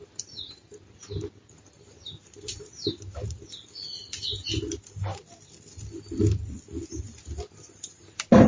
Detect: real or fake real